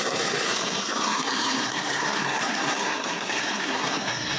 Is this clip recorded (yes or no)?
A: no